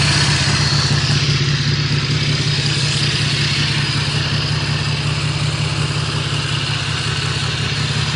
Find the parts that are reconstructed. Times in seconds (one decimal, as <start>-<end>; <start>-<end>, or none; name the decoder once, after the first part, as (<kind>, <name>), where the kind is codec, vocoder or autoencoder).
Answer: none